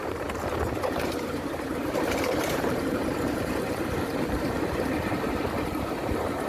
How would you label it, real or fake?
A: fake